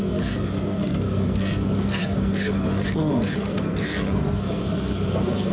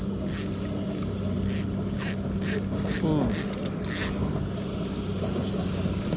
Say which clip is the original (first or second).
second